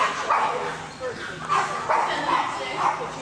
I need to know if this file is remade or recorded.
recorded